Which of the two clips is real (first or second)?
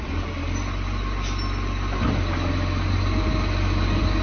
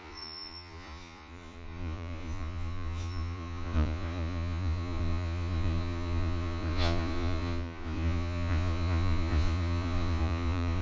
first